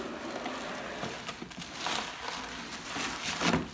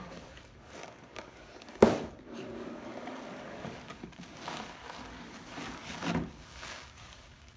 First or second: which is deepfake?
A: second